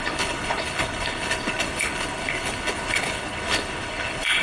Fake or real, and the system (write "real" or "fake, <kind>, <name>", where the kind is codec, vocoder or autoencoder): fake, codec, HILCodec